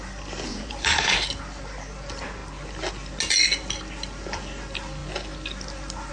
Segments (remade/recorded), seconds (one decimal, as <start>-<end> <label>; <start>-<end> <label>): 0.0-0.5 recorded; 0.5-1.3 remade; 1.3-6.1 recorded